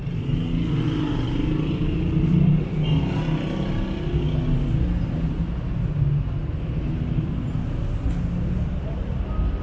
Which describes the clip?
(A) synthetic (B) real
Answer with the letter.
B